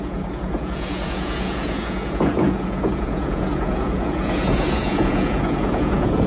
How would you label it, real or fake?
fake